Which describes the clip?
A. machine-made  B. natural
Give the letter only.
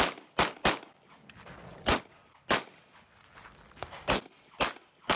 B